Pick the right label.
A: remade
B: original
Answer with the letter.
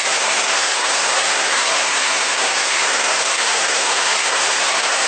A